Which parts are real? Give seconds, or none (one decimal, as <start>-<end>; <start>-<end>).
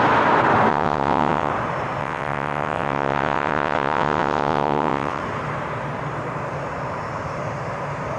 0.0-0.7; 1.5-2.0; 5.2-8.2